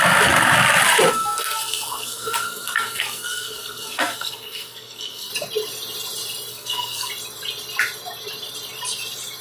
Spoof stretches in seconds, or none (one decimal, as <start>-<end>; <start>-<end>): 1.1-5.3; 6.5-7.1